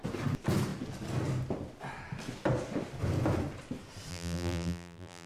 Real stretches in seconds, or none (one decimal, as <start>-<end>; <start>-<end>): 0.0-4.1